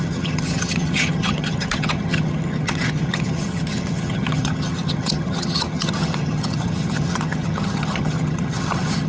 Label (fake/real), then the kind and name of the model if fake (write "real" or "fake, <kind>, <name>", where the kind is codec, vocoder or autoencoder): fake, vocoder, HiFi-GAN